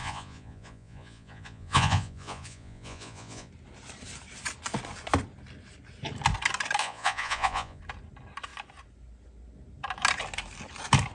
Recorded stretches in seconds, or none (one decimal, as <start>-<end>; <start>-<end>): 3.5-6.8; 7.8-11.1